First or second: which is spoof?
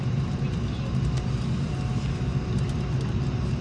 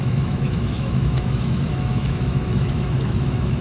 second